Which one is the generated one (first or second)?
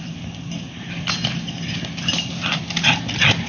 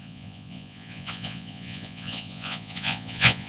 second